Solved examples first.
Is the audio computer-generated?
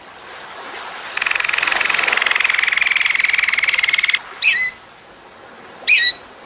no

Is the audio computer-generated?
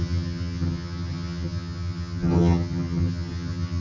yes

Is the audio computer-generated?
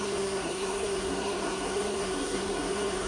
yes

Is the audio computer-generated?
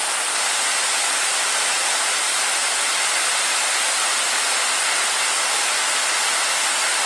no